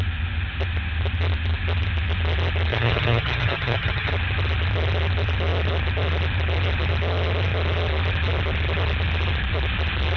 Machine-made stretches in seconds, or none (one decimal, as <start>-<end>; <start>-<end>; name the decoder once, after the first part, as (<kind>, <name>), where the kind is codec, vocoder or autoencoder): 2.7-4.1 (vocoder, HiFi-GAN)